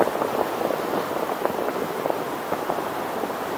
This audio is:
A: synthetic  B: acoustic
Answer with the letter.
B